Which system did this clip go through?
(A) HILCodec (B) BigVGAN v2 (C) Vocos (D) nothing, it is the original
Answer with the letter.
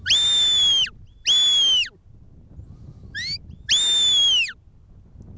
D